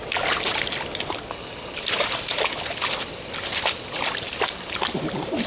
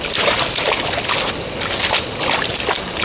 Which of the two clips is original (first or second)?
second